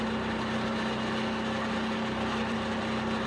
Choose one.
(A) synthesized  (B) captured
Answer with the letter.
B